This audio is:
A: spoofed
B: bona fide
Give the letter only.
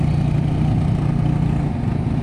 B